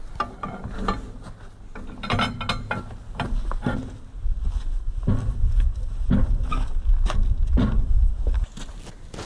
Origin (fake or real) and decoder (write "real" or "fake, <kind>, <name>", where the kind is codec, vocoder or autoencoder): real